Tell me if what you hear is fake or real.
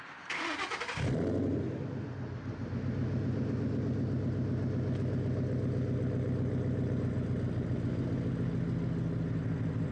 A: real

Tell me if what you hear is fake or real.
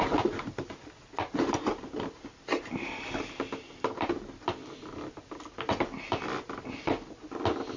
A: real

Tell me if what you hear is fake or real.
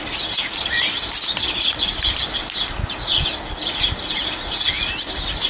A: real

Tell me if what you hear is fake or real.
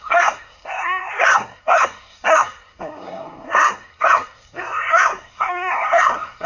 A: fake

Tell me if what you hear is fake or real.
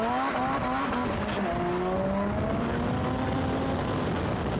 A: real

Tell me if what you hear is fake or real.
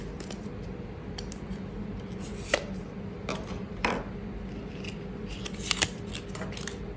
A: real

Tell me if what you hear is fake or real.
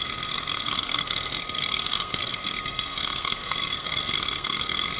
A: fake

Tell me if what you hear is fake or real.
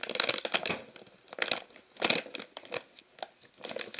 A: real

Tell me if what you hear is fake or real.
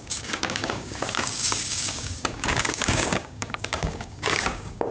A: fake